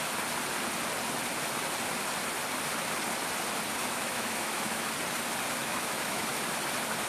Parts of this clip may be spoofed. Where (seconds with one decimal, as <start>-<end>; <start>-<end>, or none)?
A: 3.8-4.9; 5.6-6.3